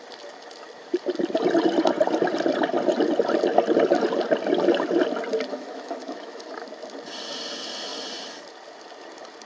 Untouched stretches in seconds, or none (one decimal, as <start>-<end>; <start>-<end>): 0.0-5.5; 6.5-9.5